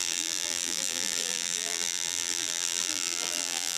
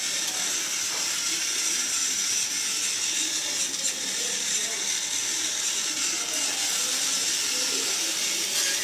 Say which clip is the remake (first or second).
first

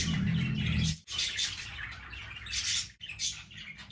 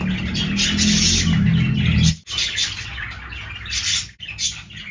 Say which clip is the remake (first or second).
first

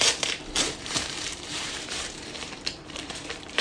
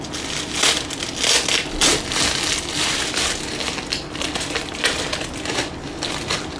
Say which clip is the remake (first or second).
first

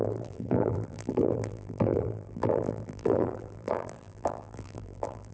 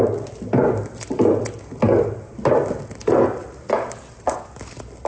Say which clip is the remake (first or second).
first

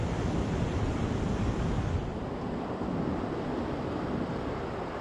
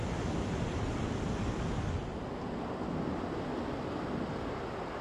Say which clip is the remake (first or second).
first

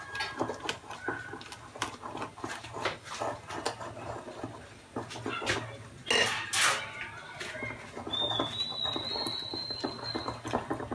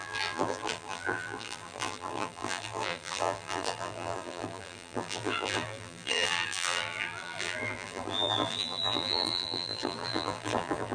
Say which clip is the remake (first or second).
second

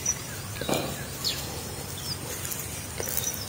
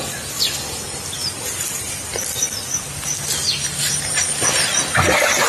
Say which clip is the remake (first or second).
second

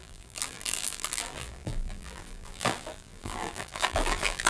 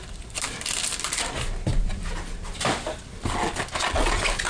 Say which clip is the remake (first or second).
first